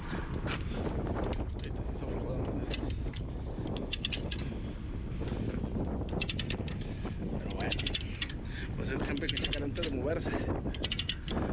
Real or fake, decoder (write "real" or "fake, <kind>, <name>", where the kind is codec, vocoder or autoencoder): real